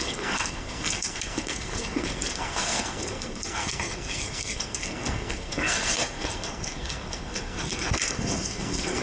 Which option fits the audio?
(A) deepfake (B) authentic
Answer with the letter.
A